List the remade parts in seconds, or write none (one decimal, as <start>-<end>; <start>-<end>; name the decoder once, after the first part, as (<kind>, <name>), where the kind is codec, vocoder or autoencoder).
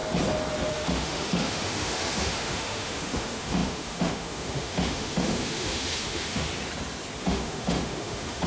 0.7-6.5 (autoencoder, DAC-VAE); 7.2-8.5